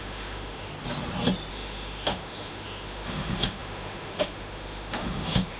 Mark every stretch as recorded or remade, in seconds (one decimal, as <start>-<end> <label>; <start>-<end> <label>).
0.0-0.7 remade; 0.7-1.5 recorded; 1.5-5.6 remade